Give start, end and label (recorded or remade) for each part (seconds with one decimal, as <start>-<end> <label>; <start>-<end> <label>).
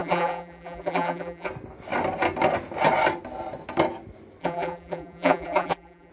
0.0-1.5 remade; 1.5-4.4 recorded; 4.4-6.1 remade